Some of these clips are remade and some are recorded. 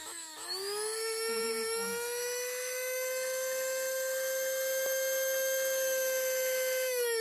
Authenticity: remade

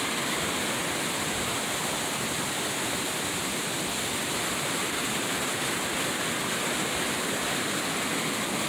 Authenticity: recorded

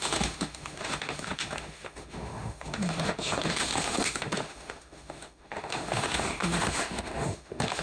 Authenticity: remade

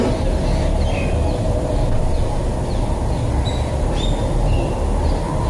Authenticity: recorded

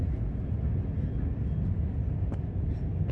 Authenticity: recorded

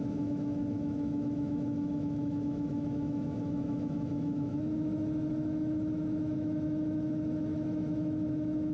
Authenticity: remade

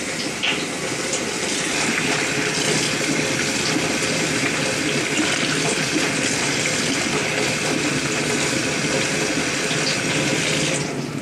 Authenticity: recorded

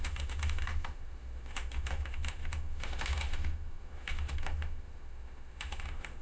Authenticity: remade